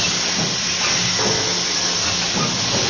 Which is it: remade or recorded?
recorded